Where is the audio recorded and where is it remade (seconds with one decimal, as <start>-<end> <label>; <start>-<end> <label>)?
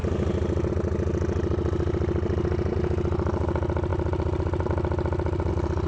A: 0.0-5.9 recorded